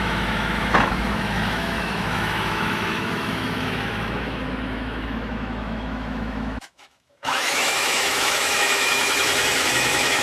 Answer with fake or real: fake